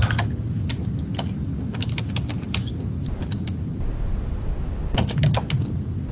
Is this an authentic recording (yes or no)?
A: yes